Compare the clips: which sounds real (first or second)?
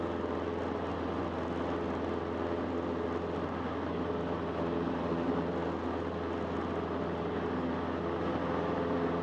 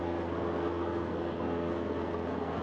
first